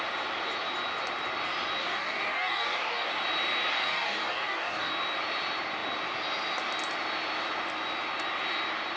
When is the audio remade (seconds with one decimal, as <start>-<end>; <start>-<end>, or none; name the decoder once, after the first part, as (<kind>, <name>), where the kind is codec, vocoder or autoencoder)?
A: 1.8-3.1 (codec, DAC); 3.7-4.9